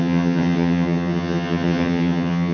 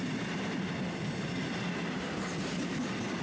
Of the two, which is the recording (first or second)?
second